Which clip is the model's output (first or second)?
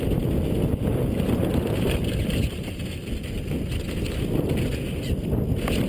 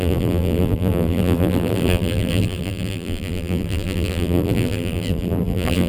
second